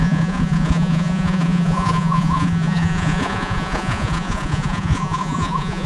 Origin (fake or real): fake